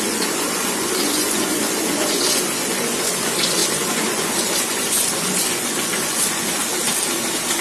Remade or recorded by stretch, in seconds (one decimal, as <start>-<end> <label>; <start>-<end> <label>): 0.0-6.7 remade; 6.7-7.6 recorded